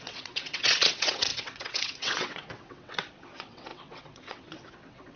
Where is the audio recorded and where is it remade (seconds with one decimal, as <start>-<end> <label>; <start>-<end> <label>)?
0.0-5.2 remade